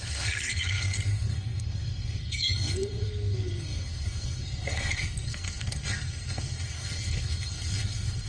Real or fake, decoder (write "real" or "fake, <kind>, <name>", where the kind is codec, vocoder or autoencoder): fake, codec, SNAC